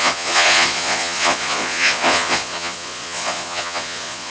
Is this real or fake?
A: fake